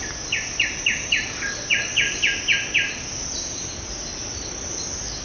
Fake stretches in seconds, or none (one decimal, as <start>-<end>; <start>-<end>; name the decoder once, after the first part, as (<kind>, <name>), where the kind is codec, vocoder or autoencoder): none